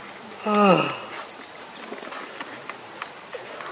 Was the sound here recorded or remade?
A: recorded